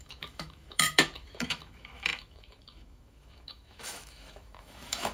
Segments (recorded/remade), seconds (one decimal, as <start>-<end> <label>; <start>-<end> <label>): 0.0-5.1 remade